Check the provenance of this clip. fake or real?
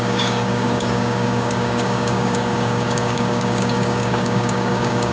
fake